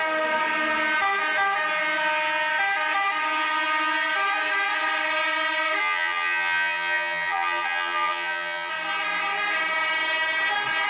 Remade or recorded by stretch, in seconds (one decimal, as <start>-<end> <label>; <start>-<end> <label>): 0.0-5.8 recorded; 5.8-8.7 remade; 8.7-10.9 recorded